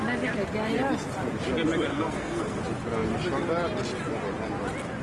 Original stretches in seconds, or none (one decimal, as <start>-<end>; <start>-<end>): 0.0-1.9; 2.6-5.0